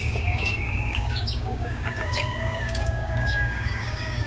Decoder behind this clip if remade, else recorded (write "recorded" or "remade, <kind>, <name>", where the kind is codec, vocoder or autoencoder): remade, codec, DAC